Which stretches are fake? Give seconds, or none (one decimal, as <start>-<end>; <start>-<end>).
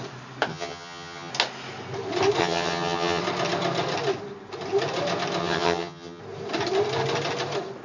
0.5-1.3; 2.4-3.2; 5.4-6.2